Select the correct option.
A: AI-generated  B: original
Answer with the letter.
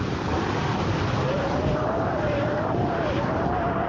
A